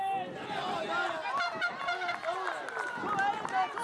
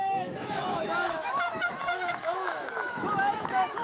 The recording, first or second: first